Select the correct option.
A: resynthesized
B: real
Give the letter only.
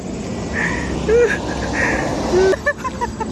B